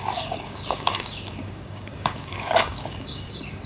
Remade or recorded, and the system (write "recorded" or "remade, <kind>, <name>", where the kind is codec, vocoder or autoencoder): remade, codec, DAC